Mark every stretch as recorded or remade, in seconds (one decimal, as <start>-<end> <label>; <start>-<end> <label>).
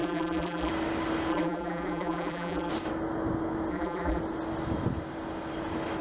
0.0-0.7 remade; 0.7-1.3 recorded; 1.3-2.7 remade; 2.7-3.7 recorded; 3.7-4.2 remade; 4.2-6.0 recorded